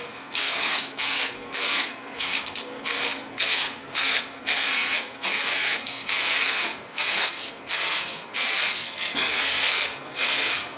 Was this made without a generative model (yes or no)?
no